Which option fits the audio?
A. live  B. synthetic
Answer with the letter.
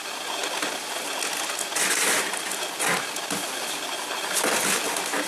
A